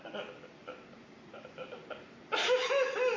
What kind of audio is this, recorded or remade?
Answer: recorded